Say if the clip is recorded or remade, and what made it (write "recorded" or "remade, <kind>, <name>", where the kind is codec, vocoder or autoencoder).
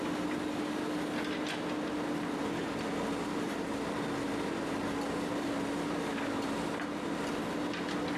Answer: recorded